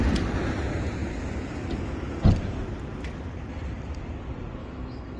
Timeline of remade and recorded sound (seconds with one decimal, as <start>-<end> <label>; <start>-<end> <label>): 0.0-4.6 recorded; 4.6-5.2 remade